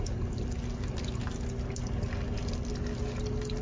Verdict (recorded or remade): recorded